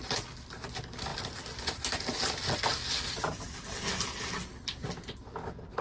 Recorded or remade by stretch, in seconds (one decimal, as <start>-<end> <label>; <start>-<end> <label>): 0.0-5.8 recorded